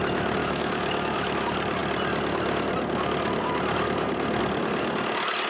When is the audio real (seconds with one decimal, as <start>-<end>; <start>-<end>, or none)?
0.0-0.4; 1.4-5.5